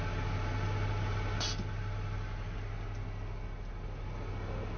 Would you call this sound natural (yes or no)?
yes